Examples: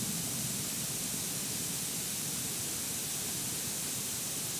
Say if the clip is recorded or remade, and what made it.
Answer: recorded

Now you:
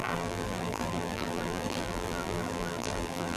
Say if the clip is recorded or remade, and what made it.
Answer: remade, vocoder, BigVGAN v2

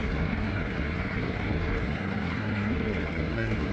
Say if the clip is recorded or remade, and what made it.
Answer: remade, codec, SNAC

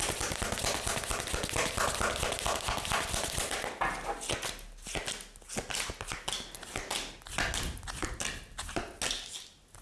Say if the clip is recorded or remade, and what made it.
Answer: recorded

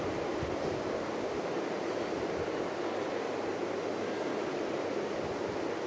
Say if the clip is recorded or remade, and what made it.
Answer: remade, vocoder, BigVGAN v2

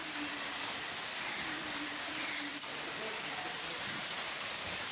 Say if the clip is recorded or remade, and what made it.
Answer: remade, vocoder, BigVGAN v2